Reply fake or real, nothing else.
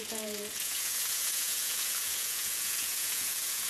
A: fake